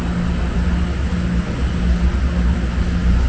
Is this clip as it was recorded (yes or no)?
yes